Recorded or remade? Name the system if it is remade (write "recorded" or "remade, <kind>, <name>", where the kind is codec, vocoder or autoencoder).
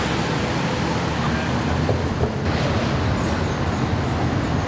recorded